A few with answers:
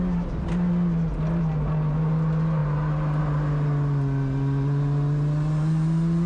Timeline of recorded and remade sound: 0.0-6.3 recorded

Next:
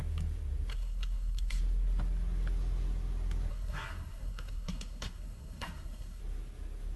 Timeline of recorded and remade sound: 0.0-0.7 recorded; 0.7-1.6 remade; 1.6-3.5 recorded; 3.5-6.2 remade; 6.2-7.0 recorded

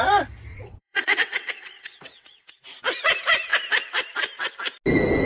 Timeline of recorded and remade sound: 0.0-0.5 recorded; 0.5-2.5 remade; 2.5-5.3 recorded